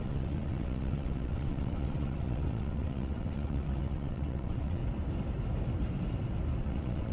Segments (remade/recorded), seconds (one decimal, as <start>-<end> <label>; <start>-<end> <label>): 0.0-4.8 remade; 4.8-6.6 recorded; 6.6-7.1 remade